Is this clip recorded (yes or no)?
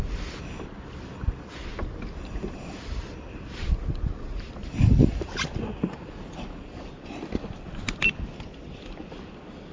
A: yes